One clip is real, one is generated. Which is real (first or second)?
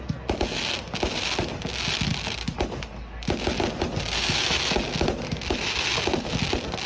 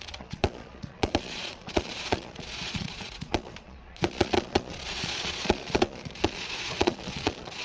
first